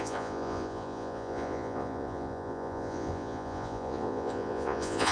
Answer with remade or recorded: remade